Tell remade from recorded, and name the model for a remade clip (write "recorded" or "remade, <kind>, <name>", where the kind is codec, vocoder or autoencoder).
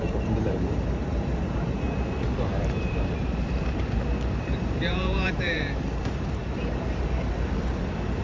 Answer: remade, vocoder, BigVGAN v2